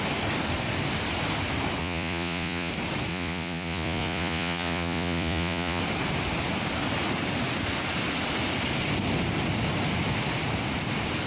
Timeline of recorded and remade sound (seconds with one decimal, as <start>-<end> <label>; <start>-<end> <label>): 0.0-1.8 recorded; 1.8-2.7 remade; 2.7-3.1 recorded; 3.1-5.8 remade; 5.8-11.3 recorded